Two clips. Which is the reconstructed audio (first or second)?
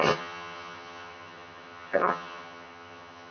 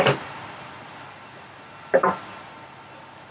first